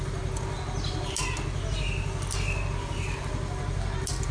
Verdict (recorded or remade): recorded